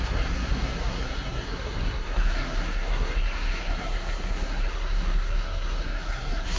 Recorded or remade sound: remade